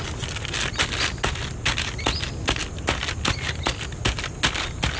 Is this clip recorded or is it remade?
recorded